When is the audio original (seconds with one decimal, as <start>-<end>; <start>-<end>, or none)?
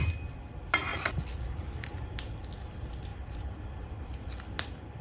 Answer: 0.0-0.9; 1.9-3.1; 3.9-5.0